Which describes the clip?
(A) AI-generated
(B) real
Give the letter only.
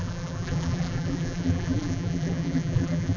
A